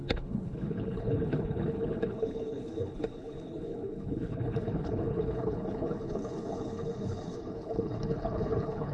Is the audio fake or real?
fake